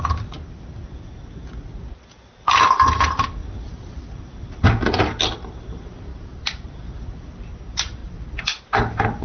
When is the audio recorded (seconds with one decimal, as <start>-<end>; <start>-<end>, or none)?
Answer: 0.0-6.1; 6.7-8.0; 8.6-9.2